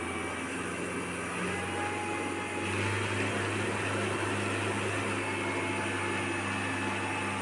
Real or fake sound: real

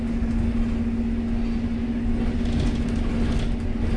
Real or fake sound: real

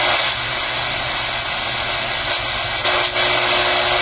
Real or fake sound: real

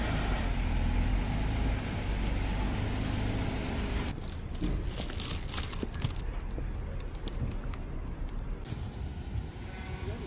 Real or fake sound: real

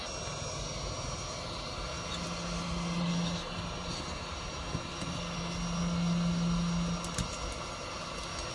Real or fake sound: real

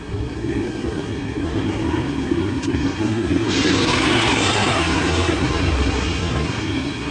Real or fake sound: fake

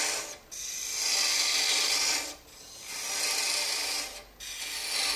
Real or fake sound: real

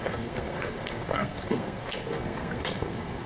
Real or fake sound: fake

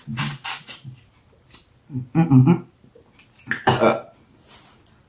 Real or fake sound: real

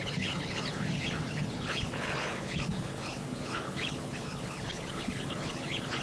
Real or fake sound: fake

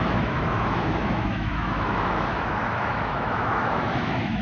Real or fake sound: fake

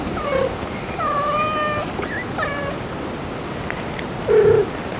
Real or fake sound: real